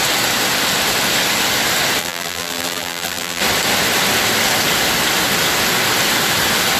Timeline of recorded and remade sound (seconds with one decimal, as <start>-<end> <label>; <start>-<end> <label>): 0.0-2.0 recorded; 2.0-3.4 remade; 3.4-6.8 recorded